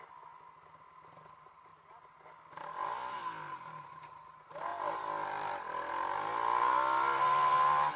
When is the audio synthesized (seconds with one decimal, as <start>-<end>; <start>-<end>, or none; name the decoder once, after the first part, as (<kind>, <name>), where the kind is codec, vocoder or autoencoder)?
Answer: none